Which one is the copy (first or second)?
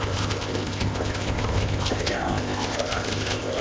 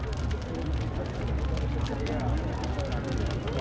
first